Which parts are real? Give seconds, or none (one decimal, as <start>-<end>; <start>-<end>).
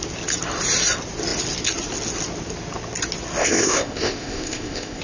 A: 0.0-3.4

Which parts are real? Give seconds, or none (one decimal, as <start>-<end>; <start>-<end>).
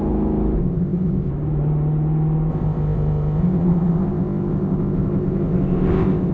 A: 0.0-0.6; 1.3-2.5